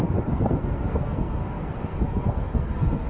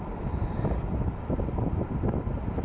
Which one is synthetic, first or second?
first